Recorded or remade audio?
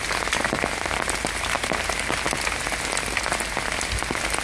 recorded